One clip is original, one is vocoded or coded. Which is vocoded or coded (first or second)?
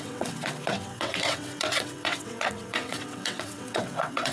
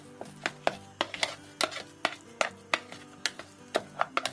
first